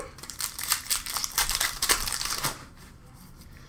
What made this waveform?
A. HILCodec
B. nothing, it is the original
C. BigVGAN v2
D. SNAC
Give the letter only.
C